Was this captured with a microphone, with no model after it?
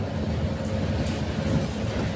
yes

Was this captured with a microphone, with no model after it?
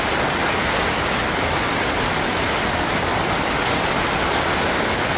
yes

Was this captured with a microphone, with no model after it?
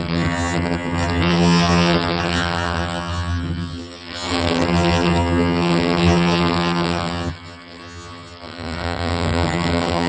no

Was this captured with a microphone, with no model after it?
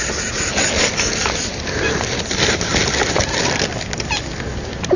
yes